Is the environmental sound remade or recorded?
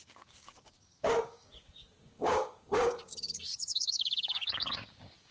remade